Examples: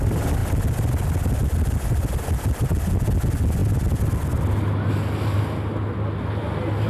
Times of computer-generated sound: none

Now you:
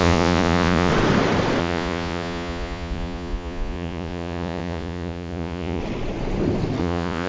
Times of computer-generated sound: 0.0-0.9 (vocoder, Vocos); 1.6-5.8; 6.8-7.3

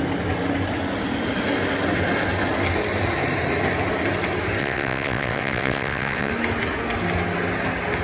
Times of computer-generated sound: 4.6-6.3 (vocoder, WaveNeXt)

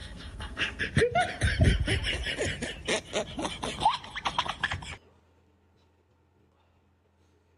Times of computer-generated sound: 0.0-0.8 (codec, SNAC)

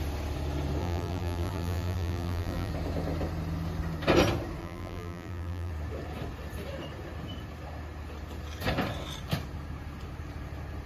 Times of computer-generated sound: 0.8-2.7 (vocoder, BigVGAN v2); 4.6-5.7

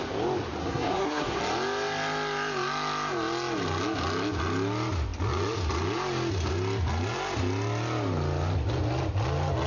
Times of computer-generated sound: 0.6-1.4 (codec, SNAC)

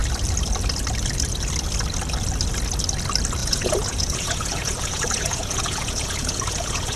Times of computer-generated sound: 3.4-7.0 (vocoder, Vocos)

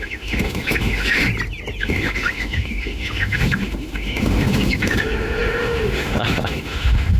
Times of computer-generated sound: 0.0-1.3 (autoencoder, DAC-VAE); 1.8-7.2